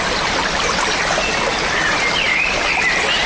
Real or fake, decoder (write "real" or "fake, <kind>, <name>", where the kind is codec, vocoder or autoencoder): real